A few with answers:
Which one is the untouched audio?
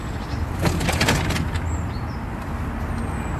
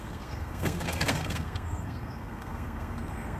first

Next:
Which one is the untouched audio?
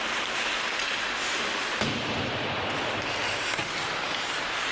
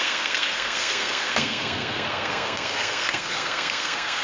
first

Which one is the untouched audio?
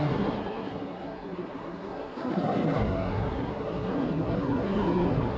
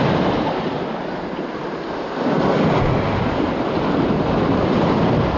second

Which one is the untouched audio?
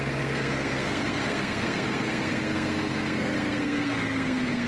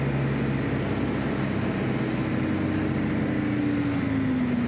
second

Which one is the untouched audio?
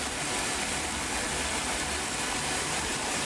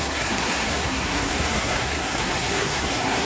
first